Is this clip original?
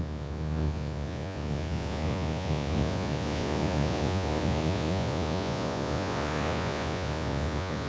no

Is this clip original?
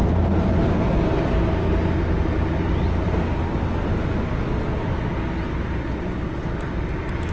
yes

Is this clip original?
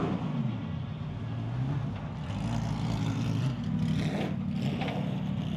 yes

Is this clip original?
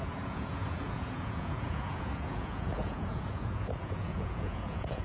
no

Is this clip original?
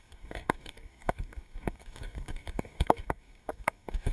no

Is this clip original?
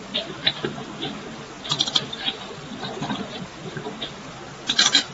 yes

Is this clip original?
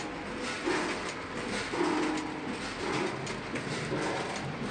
yes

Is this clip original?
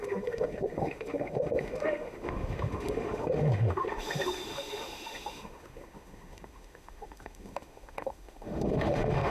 no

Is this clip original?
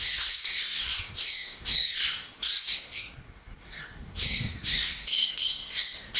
no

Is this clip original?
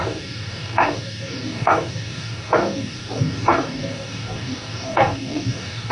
no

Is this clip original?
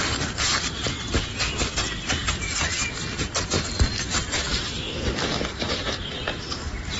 yes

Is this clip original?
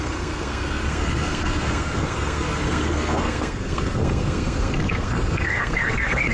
no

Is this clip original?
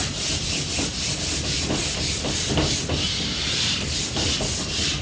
yes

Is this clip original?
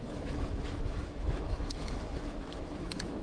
no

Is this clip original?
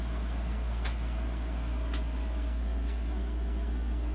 no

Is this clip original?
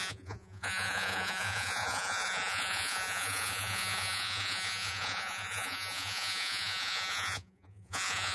no